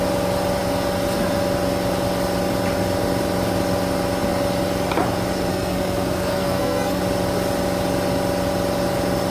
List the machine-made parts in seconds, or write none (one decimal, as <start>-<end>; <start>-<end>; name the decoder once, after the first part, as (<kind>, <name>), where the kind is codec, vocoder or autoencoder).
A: 5.5-7.0 (codec, SNAC)